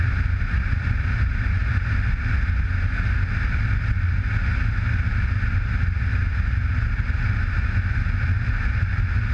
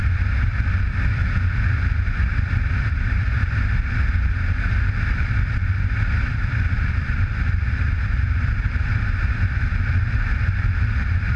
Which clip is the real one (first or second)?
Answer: first